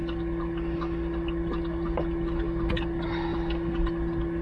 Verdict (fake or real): real